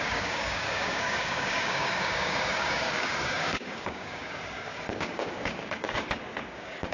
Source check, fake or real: fake